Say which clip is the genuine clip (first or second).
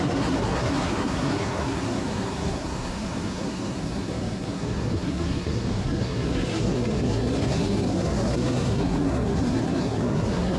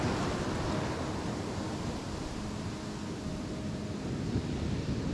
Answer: second